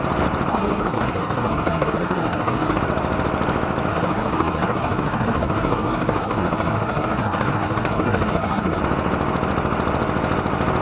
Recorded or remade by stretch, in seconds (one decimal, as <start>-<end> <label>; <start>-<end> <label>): 0.0-0.5 recorded; 0.5-2.8 remade; 2.8-3.9 recorded; 3.9-8.8 remade; 8.8-10.8 recorded

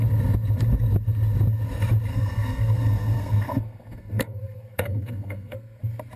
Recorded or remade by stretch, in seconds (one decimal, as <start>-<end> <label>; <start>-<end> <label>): 0.0-2.1 recorded; 2.1-5.8 remade; 5.8-6.2 recorded

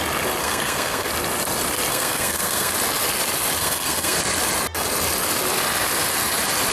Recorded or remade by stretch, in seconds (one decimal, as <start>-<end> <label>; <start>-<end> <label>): 0.0-0.4 recorded; 0.4-1.1 remade; 1.1-1.9 recorded; 1.9-2.7 remade; 2.7-3.6 recorded; 3.6-4.2 remade; 4.2-6.7 recorded

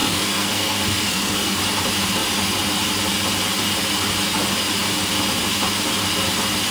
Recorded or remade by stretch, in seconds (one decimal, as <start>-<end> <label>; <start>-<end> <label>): 0.0-1.6 remade; 1.6-6.7 recorded